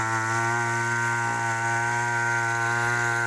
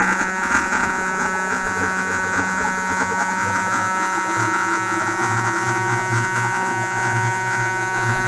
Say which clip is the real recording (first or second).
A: first